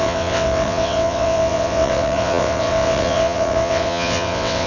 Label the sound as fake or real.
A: fake